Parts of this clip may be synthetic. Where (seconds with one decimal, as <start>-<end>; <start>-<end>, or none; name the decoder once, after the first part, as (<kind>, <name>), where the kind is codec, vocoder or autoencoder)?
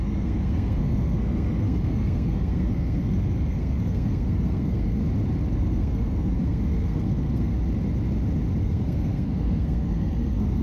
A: 0.0-5.0 (codec, SNAC); 5.5-7.5; 8.6-10.6